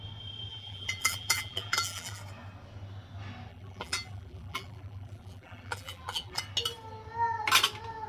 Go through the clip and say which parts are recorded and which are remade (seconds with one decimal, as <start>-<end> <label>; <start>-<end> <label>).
0.0-0.5 recorded; 0.5-2.2 remade; 2.2-3.5 recorded; 3.5-6.4 remade; 6.4-8.1 recorded